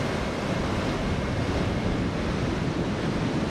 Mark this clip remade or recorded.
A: recorded